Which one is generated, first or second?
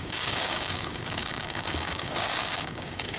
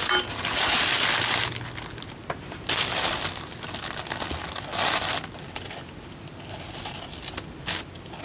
first